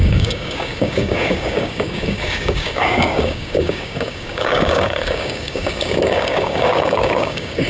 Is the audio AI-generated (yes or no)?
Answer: yes